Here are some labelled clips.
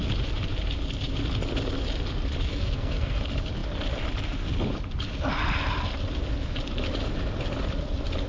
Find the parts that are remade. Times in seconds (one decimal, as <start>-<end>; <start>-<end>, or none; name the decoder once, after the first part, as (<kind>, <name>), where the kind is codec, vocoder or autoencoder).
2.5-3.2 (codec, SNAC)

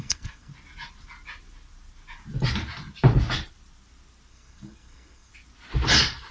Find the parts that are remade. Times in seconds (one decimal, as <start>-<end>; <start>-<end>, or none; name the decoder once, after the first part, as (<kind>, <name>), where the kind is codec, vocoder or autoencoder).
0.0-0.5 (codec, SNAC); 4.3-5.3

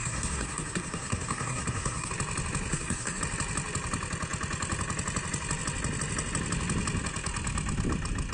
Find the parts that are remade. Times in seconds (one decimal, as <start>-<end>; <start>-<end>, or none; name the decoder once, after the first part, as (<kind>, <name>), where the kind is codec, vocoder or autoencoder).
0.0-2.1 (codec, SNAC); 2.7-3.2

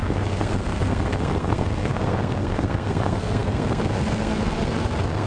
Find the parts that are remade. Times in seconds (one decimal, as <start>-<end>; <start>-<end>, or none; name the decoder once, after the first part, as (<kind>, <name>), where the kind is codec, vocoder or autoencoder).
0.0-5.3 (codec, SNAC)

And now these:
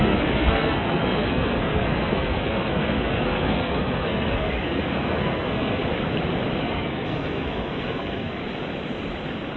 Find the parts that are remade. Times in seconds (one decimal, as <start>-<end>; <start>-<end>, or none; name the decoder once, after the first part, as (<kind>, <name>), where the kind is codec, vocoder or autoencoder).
0.0-5.8 (codec, SNAC); 6.6-8.4